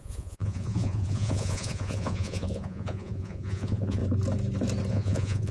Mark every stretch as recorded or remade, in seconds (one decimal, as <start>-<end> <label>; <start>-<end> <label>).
0.0-4.0 remade; 4.0-4.9 recorded; 4.9-5.5 remade